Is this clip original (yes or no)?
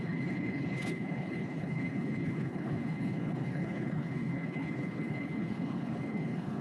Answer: no